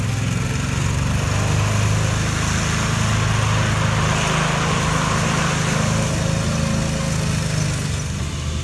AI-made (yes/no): no